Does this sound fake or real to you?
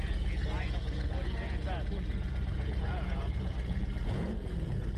fake